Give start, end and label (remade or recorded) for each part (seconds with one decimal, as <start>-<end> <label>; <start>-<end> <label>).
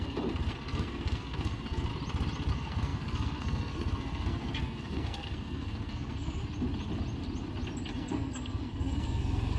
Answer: 0.0-1.9 remade; 1.9-2.5 recorded; 2.5-6.4 remade; 6.4-7.9 recorded; 7.9-9.6 remade